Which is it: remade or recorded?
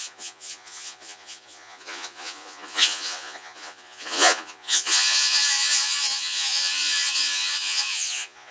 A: remade